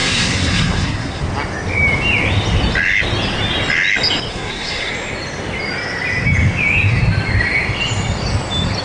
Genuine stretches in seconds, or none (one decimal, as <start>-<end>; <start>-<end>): 1.2-4.3; 4.9-8.8